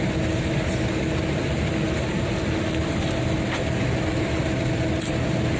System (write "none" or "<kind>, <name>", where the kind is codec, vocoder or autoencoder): vocoder, BigVGAN v2